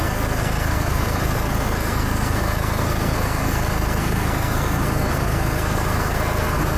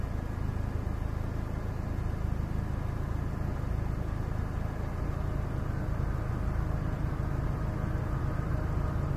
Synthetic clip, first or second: first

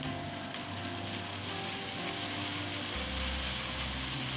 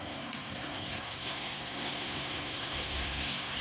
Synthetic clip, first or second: second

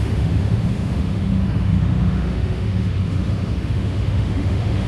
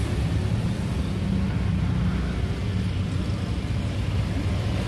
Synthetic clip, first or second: first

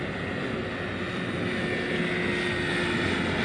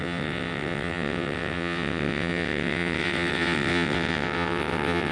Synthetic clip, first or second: second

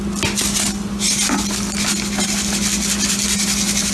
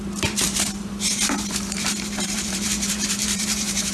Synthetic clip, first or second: second